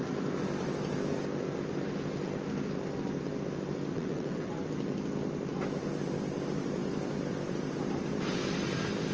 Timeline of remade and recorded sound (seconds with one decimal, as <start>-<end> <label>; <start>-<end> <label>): 0.0-3.9 recorded; 3.9-4.7 remade; 4.7-9.1 recorded